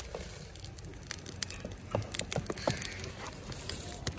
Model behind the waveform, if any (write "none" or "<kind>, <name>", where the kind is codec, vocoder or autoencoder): none